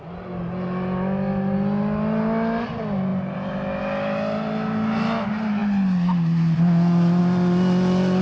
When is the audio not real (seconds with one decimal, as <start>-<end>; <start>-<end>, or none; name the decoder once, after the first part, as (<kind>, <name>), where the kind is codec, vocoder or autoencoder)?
none